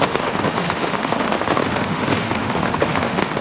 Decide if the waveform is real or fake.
fake